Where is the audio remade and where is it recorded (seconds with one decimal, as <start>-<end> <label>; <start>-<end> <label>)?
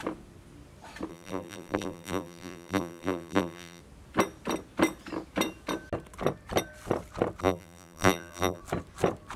0.0-1.1 recorded; 1.1-3.8 remade; 3.8-7.4 recorded; 7.4-8.6 remade; 8.6-9.4 recorded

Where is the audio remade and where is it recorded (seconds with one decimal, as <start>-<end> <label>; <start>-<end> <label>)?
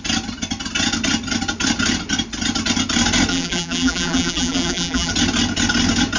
0.0-3.3 recorded; 3.3-5.1 remade; 5.1-6.2 recorded